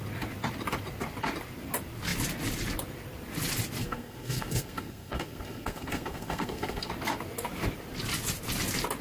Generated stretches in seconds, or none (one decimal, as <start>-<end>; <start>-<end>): 3.8-6.9